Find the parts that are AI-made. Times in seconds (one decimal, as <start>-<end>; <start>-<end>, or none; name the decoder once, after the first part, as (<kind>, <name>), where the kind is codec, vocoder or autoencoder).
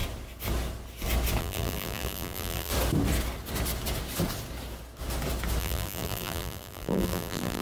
1.4-2.7 (vocoder, BigVGAN v2); 5.6-7.6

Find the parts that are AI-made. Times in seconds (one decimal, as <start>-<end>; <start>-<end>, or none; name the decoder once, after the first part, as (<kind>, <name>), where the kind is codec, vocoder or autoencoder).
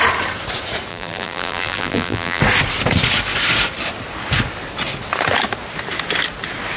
0.9-2.4 (vocoder, BigVGAN v2)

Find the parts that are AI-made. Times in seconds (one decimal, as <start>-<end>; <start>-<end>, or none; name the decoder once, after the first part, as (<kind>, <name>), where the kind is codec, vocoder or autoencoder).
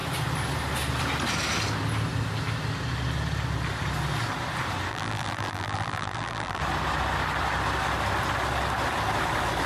4.9-6.6 (vocoder, BigVGAN v2)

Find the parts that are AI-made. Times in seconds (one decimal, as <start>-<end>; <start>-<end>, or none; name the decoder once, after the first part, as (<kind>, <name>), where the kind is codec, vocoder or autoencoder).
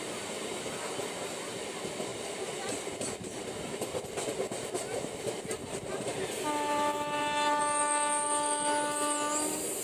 5.6-7.6 (vocoder, BigVGAN v2)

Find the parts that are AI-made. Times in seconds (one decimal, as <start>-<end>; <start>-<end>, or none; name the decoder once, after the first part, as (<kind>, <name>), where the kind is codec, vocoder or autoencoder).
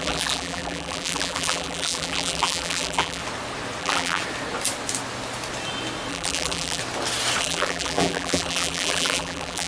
0.0-3.2 (vocoder, BigVGAN v2); 3.8-4.2; 6.1-6.8; 7.4-9.7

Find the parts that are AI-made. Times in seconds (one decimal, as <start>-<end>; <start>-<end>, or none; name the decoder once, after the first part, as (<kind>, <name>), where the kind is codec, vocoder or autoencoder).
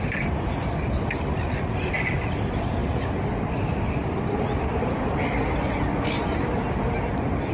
0.0-7.5 (vocoder, BigVGAN v2)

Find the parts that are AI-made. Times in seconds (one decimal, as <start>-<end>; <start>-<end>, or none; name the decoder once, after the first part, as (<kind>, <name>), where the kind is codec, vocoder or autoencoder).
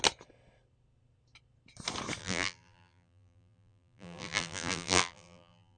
2.2-5.8 (vocoder, BigVGAN v2)